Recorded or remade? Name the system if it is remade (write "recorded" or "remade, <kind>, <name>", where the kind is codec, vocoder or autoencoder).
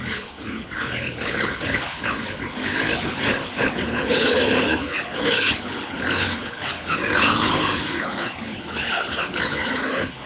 remade, codec, HILCodec